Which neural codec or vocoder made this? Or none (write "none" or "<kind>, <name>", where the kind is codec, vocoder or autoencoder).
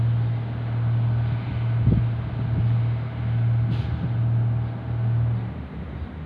none